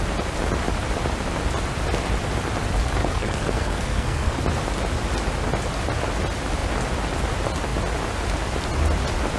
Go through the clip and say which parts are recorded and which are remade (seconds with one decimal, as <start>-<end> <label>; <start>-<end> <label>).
0.0-3.0 recorded; 3.0-4.4 remade; 4.4-9.4 recorded